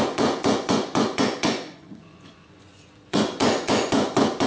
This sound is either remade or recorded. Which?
remade